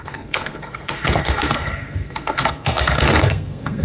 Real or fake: fake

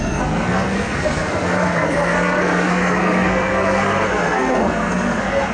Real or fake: fake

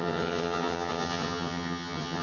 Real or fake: fake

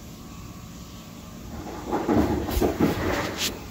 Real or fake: fake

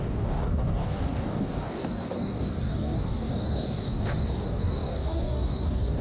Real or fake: fake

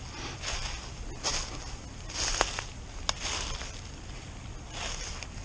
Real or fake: real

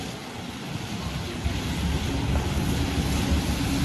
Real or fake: real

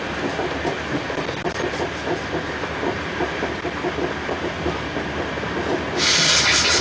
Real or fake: real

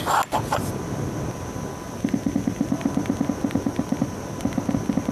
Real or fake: real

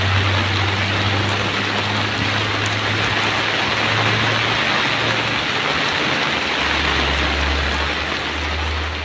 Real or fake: real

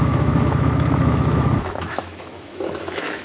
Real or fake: fake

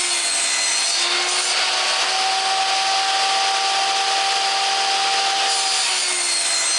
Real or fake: real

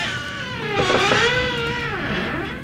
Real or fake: real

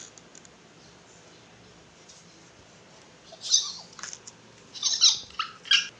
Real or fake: real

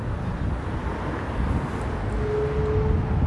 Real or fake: real